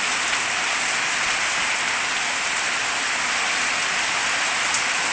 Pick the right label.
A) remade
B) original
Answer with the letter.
B